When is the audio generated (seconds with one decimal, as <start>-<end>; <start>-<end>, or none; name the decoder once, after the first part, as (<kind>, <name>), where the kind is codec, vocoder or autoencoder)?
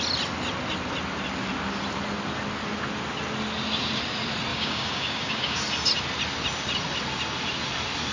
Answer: 4.5-5.6 (codec, DAC)